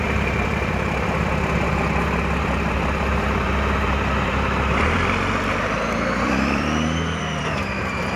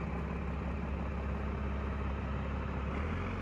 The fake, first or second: first